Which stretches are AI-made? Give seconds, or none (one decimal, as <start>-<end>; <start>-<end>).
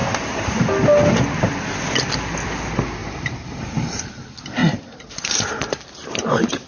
0.0-0.7; 3.0-4.0; 4.6-6.1